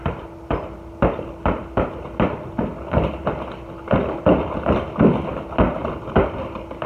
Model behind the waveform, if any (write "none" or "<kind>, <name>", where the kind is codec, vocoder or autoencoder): none